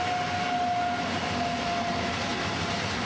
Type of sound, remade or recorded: recorded